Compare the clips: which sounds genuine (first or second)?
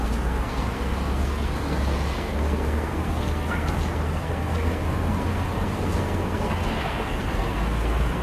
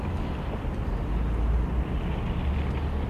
second